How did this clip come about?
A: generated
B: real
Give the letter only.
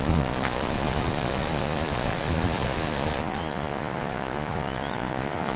A